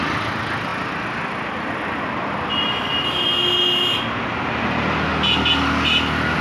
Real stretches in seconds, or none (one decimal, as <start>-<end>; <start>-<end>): 0.0-6.4